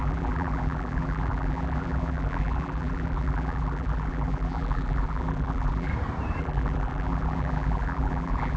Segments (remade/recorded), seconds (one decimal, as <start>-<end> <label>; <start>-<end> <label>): 0.0-5.9 remade; 5.9-6.4 recorded; 6.4-8.6 remade